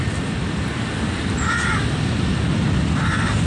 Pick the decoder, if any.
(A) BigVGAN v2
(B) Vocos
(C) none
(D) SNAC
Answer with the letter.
C